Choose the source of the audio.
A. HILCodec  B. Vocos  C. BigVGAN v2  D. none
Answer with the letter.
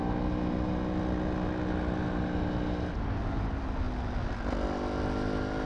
D